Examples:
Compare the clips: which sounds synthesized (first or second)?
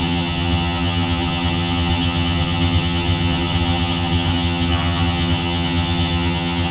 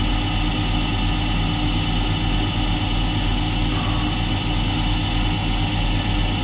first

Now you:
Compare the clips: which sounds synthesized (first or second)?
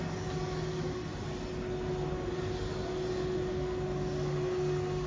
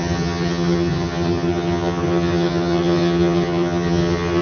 second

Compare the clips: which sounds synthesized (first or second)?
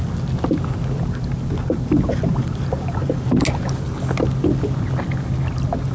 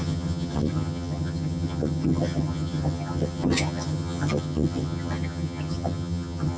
second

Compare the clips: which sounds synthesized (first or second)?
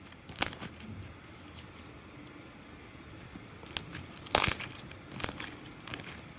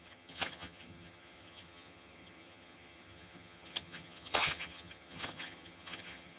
second